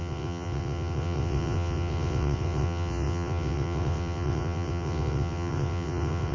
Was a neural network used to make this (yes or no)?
yes